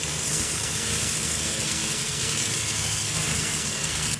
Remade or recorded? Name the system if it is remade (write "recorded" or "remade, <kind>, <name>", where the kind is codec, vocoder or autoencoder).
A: remade, codec, SNAC